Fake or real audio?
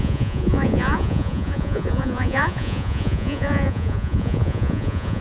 fake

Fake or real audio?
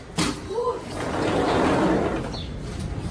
real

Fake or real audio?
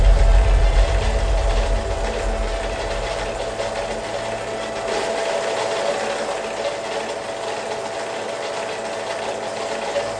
real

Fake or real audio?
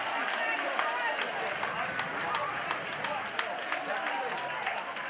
real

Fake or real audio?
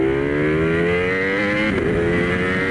real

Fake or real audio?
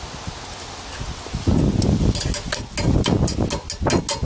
real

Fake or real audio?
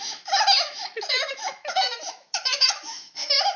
fake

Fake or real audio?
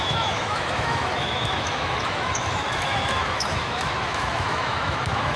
fake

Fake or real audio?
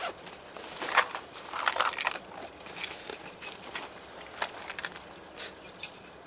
real